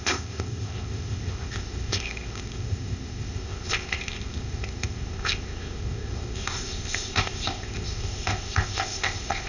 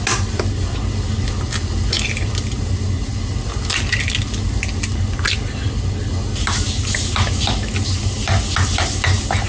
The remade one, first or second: first